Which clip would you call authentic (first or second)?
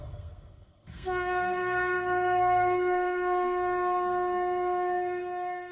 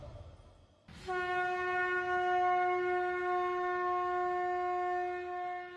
second